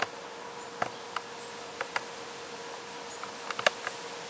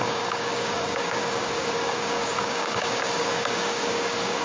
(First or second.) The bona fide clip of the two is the first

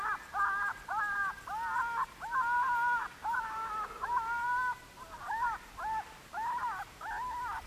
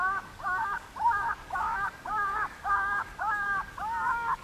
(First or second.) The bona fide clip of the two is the first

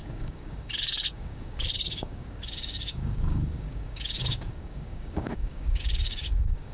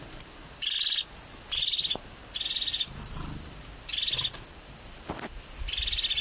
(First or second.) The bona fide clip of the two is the second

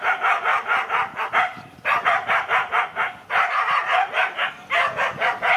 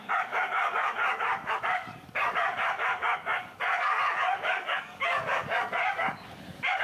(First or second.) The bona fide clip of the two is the first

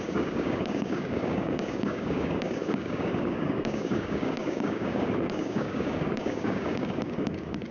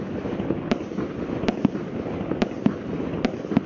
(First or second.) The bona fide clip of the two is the second